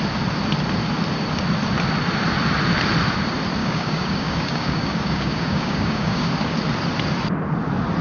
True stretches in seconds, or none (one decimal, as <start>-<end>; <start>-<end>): 0.0-3.6; 6.3-8.0